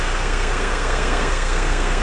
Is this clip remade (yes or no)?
yes